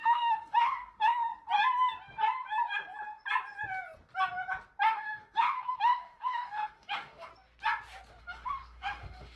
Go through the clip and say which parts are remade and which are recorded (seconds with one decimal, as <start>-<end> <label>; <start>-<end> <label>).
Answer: 0.0-1.3 remade; 1.3-4.9 recorded; 4.9-7.3 remade; 7.3-8.2 recorded; 8.2-9.4 remade